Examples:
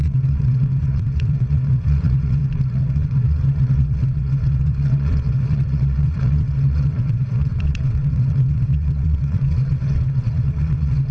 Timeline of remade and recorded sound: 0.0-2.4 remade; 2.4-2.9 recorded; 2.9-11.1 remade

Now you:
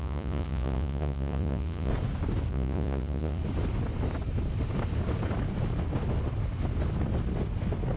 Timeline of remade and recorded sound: 0.0-1.9 remade; 1.9-2.5 recorded; 2.5-3.4 remade; 3.4-8.0 recorded

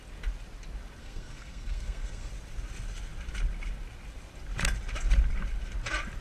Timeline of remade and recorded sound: 0.0-1.0 recorded; 1.0-2.3 remade; 2.3-6.2 recorded

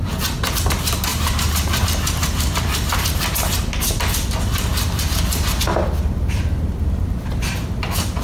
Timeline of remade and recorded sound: 0.0-1.1 recorded; 1.1-1.8 remade; 1.8-8.2 recorded

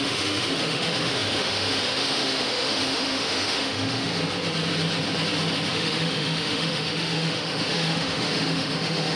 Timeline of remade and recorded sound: 0.0-4.1 remade; 4.1-5.7 recorded; 5.7-9.2 remade

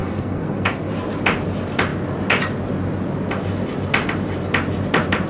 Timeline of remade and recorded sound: 0.0-0.9 remade; 0.9-5.3 recorded

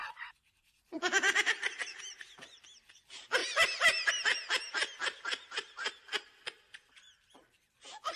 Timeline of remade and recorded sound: 0.0-2.6 remade; 2.6-3.4 recorded; 3.4-4.1 remade; 4.1-5.0 recorded; 5.0-5.9 remade; 5.9-8.2 recorded